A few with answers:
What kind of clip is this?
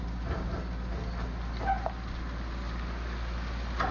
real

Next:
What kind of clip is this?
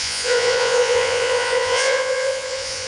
fake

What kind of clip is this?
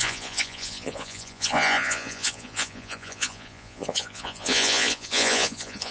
fake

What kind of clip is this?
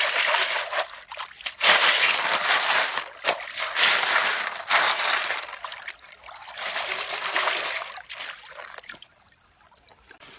real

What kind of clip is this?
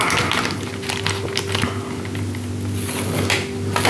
real